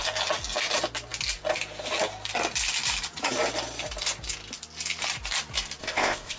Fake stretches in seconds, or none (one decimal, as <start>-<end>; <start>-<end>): 5.8-6.4